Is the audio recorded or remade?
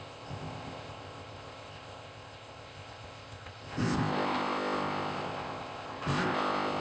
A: remade